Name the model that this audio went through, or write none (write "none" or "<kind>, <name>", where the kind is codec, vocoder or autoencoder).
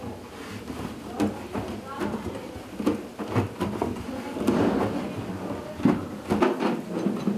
none